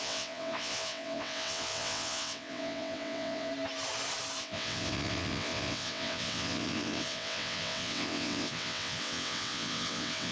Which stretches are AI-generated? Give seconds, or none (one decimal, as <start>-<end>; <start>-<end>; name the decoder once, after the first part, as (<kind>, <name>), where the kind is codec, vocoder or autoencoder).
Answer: 0.0-3.5 (vocoder, WaveNeXt); 4.4-10.3